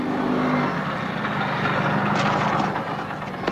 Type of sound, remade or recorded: recorded